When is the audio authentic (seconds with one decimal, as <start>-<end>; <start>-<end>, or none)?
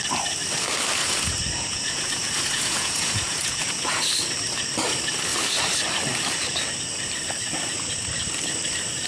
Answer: 0.0-1.0; 4.0-9.1